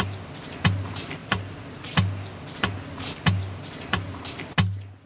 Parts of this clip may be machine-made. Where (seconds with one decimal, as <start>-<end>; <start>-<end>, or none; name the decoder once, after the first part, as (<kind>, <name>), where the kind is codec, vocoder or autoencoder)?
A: 3.4-4.3 (vocoder, BigVGAN v2)